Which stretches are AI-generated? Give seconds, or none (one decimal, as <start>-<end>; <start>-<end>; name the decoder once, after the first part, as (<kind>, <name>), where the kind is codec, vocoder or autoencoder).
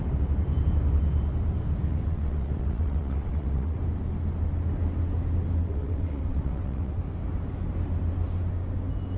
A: 1.9-3.8 (vocoder, WaveNeXt); 5.6-7.0